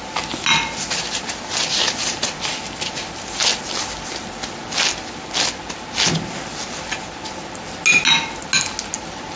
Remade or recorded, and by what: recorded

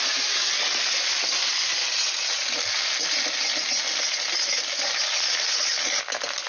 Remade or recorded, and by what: recorded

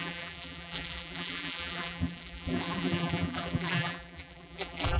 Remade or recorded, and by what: remade, vocoder, BigVGAN v2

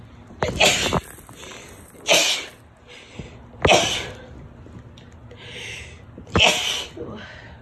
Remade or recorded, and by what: recorded